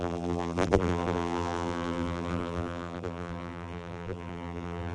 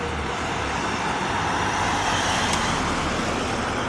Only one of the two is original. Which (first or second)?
second